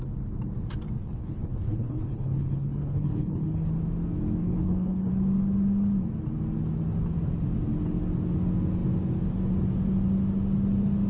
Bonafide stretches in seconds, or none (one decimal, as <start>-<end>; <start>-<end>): 0.0-1.0; 3.7-4.4; 5.1-11.1